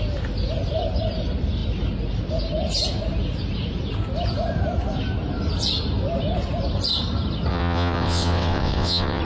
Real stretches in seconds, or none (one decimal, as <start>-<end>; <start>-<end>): 0.0-7.5